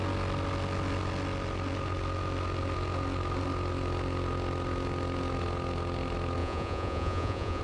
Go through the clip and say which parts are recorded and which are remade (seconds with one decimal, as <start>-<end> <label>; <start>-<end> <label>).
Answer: 0.0-6.4 recorded; 6.4-7.6 remade